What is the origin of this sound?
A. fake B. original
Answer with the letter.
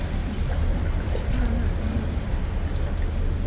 B